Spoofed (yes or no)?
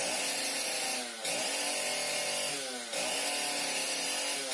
no